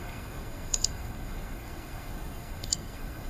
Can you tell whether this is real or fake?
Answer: fake